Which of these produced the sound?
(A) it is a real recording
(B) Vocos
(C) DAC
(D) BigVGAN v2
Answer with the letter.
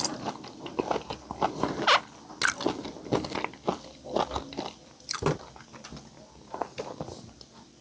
A